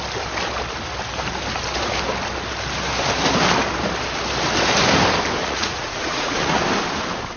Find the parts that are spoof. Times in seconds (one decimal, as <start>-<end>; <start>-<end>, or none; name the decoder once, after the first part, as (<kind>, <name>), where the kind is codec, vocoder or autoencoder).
5.4-6.6 (vocoder, Vocos)